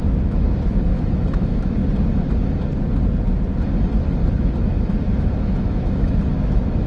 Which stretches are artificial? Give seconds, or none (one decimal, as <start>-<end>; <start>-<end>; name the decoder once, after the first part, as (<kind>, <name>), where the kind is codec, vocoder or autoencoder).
0.0-1.8 (autoencoder, DAC-VAE); 4.3-6.9